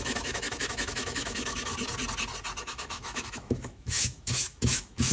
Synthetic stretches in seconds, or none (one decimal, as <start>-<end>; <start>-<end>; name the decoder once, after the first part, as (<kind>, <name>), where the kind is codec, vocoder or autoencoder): 0.0-1.7 (autoencoder, DAC-VAE); 2.6-5.1